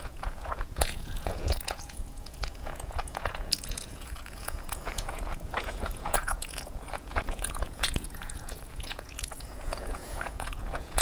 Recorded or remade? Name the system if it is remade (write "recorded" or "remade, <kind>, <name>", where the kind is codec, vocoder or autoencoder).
remade, vocoder, Vocos